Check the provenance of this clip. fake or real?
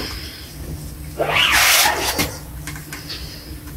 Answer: real